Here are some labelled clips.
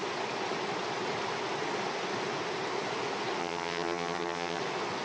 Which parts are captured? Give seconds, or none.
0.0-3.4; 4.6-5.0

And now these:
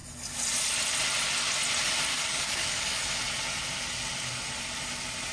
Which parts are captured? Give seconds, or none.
0.0-2.1; 3.2-5.3

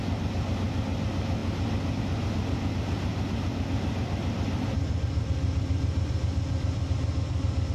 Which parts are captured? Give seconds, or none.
0.0-3.1

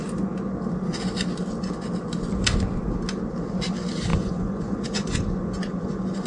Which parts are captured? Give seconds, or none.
0.0-4.1

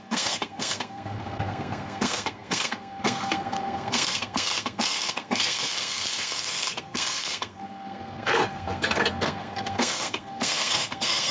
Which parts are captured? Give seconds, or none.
none